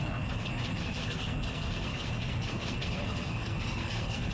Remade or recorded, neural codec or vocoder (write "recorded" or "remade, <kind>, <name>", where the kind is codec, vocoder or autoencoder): remade, codec, SNAC